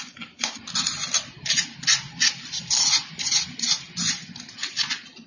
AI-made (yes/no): no